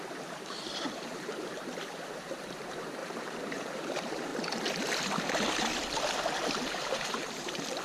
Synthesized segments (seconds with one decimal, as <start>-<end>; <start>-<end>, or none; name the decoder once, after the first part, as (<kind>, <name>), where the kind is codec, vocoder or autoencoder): 0.0-4.3 (vocoder, BigVGAN v2); 6.7-7.8